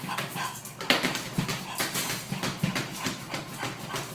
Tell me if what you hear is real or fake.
real